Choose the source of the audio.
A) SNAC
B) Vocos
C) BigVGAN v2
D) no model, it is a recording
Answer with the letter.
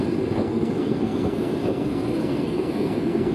A